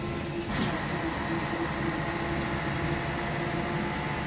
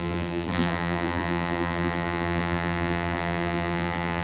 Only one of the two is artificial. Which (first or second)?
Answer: second